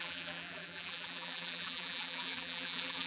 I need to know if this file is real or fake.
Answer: fake